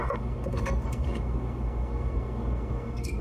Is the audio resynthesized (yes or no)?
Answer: yes